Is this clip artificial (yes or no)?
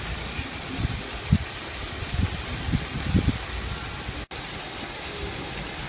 no